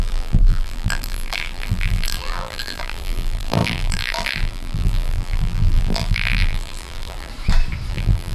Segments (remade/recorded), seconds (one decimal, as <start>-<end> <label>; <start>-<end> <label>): 0.0-7.3 remade; 7.3-7.9 recorded; 7.9-8.3 remade